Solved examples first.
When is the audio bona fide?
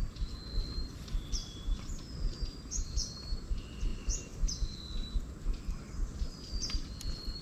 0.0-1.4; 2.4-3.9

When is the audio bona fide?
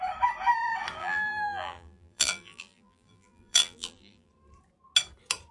0.0-1.0; 4.3-5.5